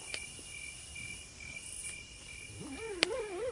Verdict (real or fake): fake